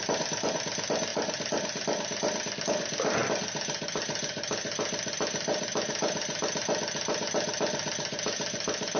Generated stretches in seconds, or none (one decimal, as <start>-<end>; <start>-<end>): none